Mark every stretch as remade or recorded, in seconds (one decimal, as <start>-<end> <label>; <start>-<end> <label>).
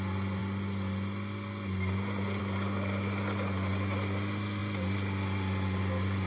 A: 0.0-6.3 recorded